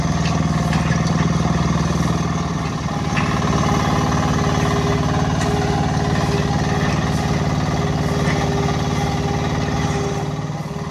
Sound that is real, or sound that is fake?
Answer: real